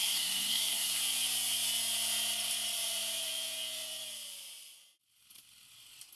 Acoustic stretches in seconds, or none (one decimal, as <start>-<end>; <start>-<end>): 1.0-6.2